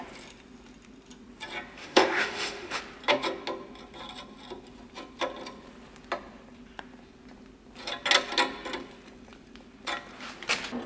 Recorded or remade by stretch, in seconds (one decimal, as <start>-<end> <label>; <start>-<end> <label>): 0.0-1.8 recorded; 1.8-2.8 remade; 2.8-10.9 recorded